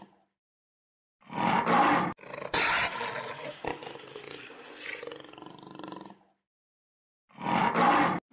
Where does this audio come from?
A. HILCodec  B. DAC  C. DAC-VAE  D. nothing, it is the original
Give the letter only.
D